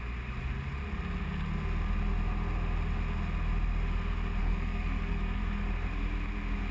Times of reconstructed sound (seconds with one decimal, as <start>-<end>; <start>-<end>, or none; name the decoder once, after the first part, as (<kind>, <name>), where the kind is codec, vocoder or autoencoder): 4.4-5.4 (codec, SNAC)